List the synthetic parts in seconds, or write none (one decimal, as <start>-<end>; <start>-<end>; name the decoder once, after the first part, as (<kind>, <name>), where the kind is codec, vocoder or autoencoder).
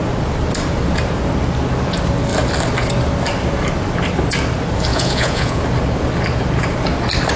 4.9-5.6 (vocoder, Vocos)